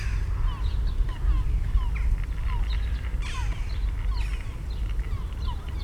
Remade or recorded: recorded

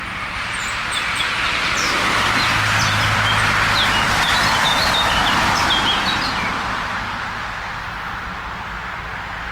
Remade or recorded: remade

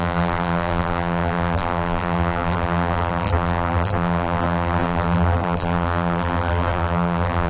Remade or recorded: remade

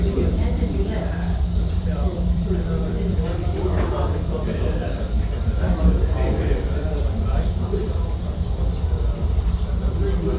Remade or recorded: remade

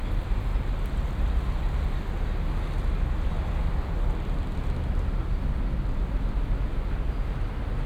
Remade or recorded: recorded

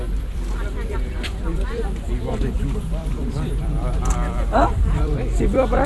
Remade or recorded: remade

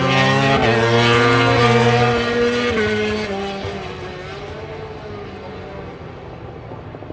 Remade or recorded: recorded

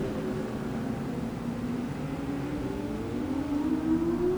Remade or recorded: recorded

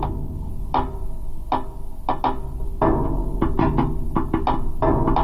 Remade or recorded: recorded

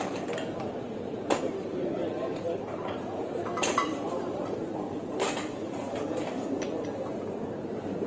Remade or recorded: remade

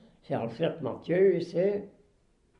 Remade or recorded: recorded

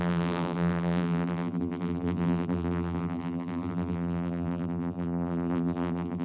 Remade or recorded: remade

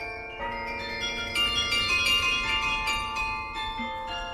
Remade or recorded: remade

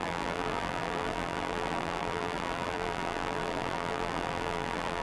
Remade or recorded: remade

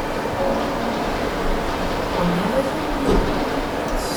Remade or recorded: remade